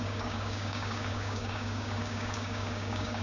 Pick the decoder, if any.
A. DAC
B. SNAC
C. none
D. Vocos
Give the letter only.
A